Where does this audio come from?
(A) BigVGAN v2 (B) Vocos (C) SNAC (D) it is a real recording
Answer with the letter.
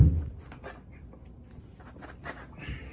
D